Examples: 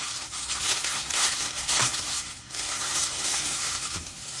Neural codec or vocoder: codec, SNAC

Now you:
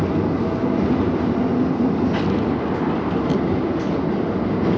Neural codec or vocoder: none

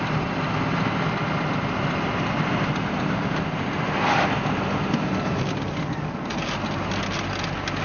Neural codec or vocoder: none